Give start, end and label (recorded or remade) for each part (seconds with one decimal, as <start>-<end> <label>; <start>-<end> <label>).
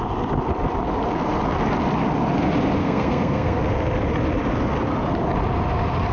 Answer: 0.0-2.8 recorded; 2.8-3.6 remade; 3.6-6.1 recorded